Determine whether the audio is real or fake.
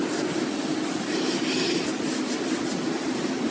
real